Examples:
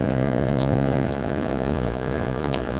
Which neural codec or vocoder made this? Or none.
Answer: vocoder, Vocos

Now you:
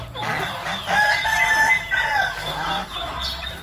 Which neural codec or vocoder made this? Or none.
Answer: none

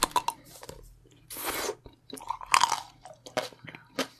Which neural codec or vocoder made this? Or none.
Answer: none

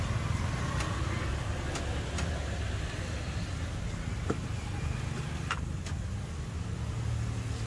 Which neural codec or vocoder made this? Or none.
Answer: none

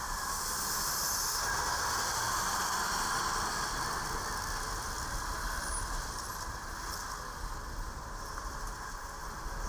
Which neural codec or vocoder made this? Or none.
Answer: none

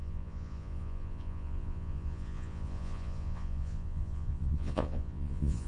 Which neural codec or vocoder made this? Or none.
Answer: vocoder, Vocos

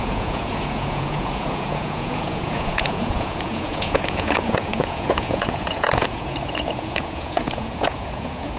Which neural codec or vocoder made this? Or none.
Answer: vocoder, Vocos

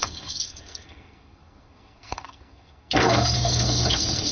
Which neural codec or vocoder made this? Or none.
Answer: codec, SNAC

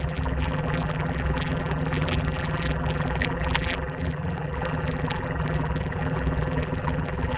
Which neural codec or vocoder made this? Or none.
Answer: vocoder, BigVGAN v2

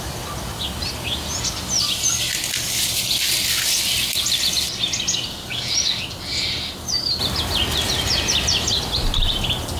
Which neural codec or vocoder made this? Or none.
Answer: none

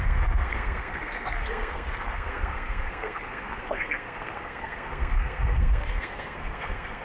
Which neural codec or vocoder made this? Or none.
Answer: codec, SNAC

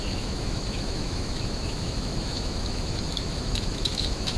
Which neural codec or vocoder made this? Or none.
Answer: autoencoder, DAC-VAE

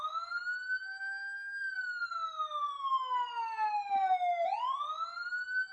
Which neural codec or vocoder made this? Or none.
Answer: none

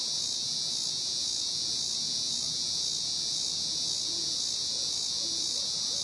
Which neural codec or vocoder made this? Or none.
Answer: vocoder, Vocos